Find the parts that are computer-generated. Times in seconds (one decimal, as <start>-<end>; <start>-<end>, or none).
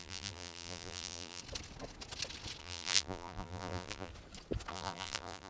0.0-1.4; 2.6-4.1; 4.7-5.5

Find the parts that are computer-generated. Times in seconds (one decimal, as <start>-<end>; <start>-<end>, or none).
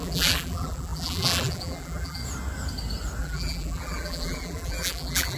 0.0-2.2; 3.2-5.4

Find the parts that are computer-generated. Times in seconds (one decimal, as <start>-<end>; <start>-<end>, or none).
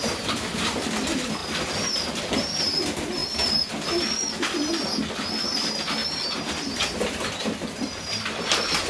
1.4-2.2; 3.2-3.7; 6.0-8.0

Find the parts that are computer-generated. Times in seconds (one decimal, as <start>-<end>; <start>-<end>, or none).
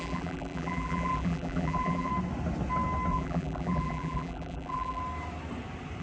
0.0-2.1; 3.1-5.0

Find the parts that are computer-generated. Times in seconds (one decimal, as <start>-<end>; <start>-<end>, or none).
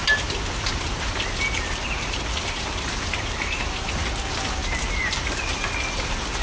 none